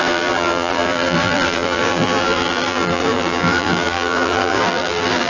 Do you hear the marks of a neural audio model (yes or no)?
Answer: yes